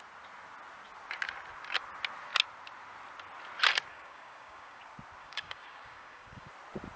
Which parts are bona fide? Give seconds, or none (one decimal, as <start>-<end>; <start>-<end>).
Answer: 0.0-3.9; 4.8-5.2; 6.5-7.0